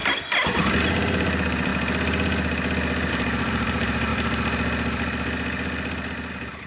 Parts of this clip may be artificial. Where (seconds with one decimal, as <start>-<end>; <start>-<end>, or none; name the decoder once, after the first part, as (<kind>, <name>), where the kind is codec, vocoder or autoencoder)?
0.8-1.7 (vocoder, BigVGAN v2); 3.1-4.1; 6.3-6.7